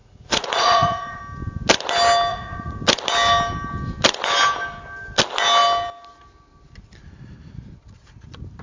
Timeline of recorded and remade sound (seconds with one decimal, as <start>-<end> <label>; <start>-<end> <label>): 0.0-1.2 remade; 1.2-2.3 recorded; 2.3-2.8 remade; 2.8-8.6 recorded